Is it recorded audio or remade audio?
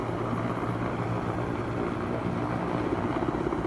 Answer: recorded